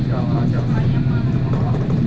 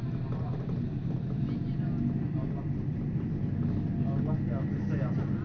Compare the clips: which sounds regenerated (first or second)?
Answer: first